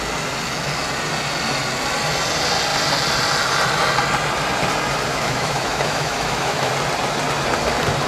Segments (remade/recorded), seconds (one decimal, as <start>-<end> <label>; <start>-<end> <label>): 0.0-5.1 recorded; 5.1-6.7 remade; 6.7-8.1 recorded